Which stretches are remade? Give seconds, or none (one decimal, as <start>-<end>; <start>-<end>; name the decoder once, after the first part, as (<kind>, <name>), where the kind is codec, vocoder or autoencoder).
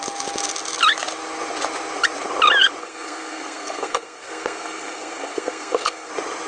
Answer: 2.8-6.1 (codec, SNAC)